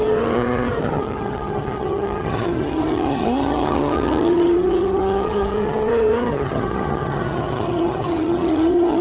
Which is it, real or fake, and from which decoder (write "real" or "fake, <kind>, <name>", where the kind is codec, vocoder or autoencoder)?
fake, vocoder, HiFi-GAN